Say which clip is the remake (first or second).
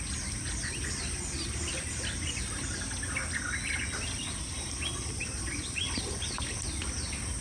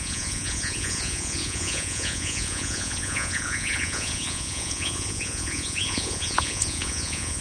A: second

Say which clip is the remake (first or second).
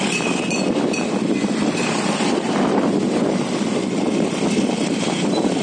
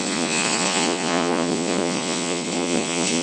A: second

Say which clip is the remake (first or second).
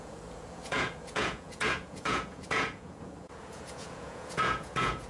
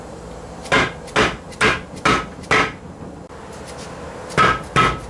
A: first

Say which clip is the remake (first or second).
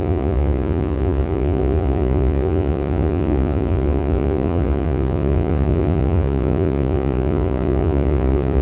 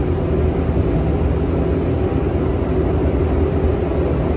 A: first